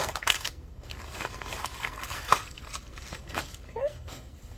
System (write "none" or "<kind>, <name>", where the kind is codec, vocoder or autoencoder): codec, SNAC